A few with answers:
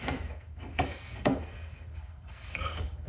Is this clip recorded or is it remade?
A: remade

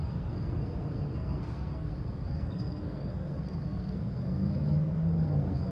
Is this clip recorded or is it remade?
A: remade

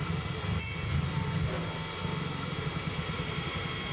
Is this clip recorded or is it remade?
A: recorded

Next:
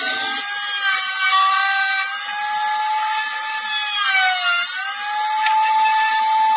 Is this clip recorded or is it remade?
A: recorded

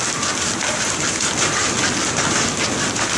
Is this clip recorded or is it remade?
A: recorded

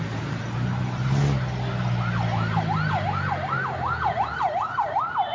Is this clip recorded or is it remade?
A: recorded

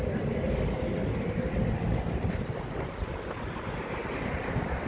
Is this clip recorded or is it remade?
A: recorded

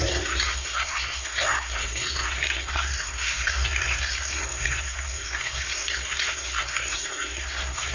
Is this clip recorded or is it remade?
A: remade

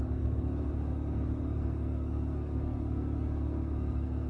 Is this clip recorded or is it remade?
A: remade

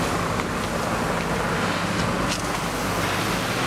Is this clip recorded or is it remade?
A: recorded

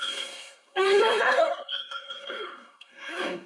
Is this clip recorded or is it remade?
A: remade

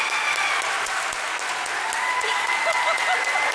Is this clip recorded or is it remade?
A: recorded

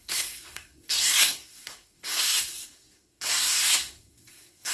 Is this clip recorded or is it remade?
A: remade